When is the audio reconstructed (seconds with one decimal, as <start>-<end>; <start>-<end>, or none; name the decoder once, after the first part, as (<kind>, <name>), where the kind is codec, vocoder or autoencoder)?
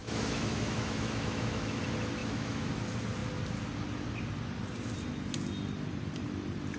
0.0-1.8 (autoencoder, DAC-VAE); 2.2-2.7